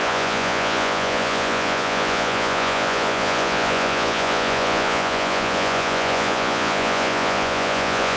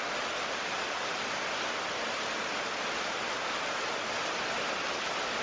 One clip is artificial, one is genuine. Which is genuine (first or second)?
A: second